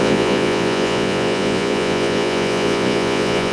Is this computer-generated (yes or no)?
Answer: yes